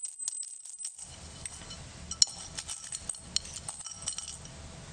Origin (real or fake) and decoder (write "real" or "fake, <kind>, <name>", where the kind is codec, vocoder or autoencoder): real